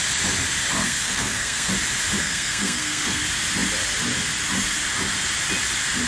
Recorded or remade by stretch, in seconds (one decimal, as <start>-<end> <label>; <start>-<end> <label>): 0.0-0.8 recorded; 0.8-1.7 remade; 1.7-2.2 recorded; 2.2-3.2 remade; 3.2-6.1 recorded